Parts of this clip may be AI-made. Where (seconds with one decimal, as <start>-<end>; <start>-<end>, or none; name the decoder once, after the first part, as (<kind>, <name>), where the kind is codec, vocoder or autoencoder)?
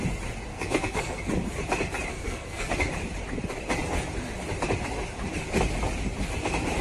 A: 0.5-1.3 (codec, SNAC); 2.1-2.7